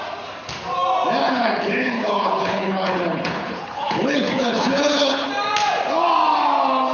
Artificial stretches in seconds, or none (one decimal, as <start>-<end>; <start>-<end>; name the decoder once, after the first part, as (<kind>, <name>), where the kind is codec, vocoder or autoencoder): 1.2-5.3 (codec, HILCodec)